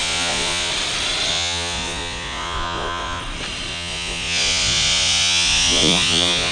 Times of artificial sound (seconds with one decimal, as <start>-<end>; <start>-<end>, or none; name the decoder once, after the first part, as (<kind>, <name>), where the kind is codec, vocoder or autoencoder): 0.0-0.7 (vocoder, Vocos); 1.3-3.2; 3.7-6.5